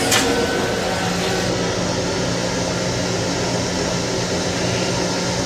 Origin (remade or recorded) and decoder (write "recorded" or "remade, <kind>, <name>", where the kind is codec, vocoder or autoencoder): recorded